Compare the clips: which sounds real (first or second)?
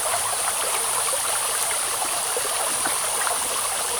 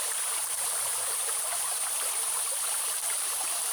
second